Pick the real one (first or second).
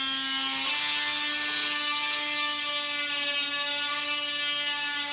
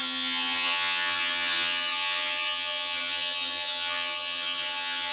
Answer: first